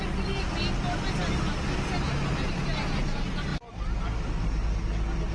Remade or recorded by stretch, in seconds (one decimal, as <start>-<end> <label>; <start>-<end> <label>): 0.0-5.3 recorded